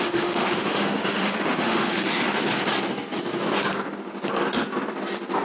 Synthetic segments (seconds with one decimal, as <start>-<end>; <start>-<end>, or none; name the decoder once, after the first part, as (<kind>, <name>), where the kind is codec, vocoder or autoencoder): 0.0-2.0 (autoencoder, DAC-VAE)